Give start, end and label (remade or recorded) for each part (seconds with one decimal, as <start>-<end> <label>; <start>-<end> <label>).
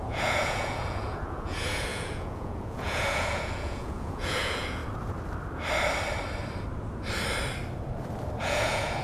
0.0-4.8 remade; 4.8-8.4 recorded; 8.4-9.0 remade